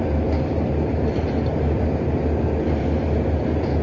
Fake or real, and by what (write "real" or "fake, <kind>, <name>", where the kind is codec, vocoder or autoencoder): real